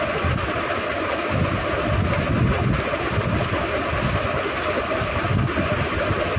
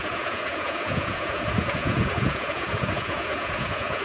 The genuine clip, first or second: first